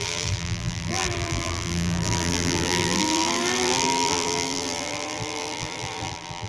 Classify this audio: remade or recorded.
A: remade